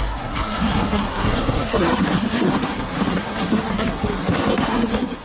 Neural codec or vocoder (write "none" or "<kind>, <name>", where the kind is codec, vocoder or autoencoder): codec, SNAC